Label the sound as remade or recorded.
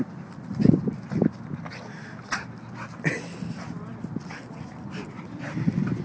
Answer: recorded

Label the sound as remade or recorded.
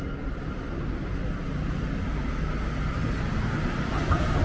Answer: recorded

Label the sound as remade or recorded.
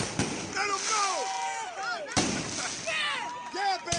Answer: recorded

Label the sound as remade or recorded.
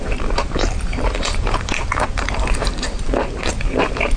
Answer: remade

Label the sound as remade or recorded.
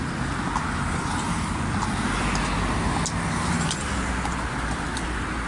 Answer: recorded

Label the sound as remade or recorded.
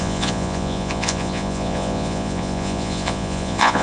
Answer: remade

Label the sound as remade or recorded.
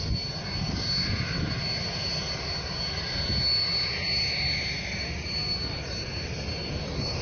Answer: recorded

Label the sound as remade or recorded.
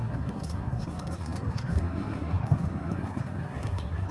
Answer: remade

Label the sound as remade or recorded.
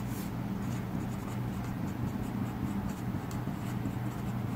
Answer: recorded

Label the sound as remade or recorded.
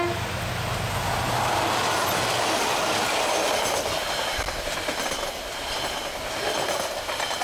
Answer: recorded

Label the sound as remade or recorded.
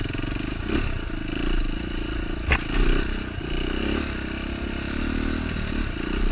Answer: recorded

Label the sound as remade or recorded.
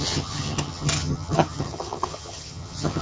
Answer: remade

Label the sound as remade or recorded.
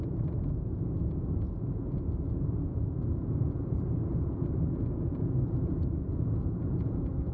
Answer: remade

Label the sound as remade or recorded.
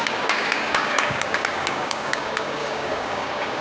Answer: remade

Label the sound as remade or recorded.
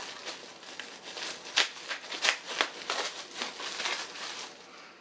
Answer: recorded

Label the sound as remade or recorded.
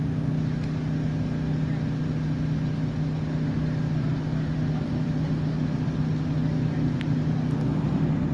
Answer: recorded